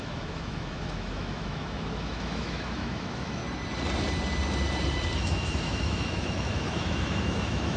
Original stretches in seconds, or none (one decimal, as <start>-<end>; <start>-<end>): 3.4-5.2